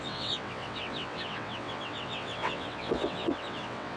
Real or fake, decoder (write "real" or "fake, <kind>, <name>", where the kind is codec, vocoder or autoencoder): fake, vocoder, WaveNeXt